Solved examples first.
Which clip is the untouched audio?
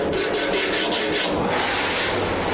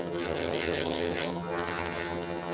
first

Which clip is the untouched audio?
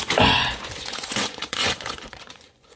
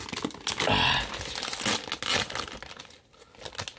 second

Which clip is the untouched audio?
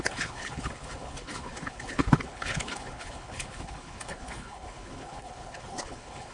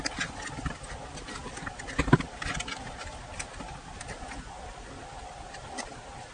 second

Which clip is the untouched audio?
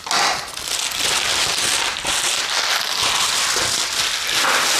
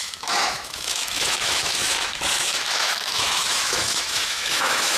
first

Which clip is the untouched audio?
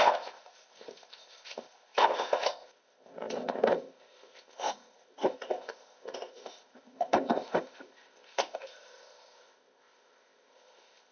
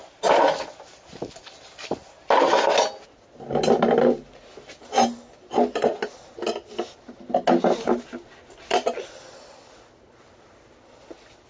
second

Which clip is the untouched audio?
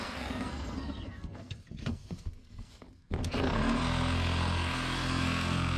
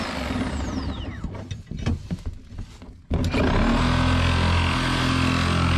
second